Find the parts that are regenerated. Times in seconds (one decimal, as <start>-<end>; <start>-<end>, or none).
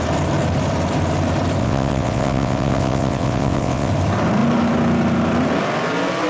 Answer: 1.6-3.9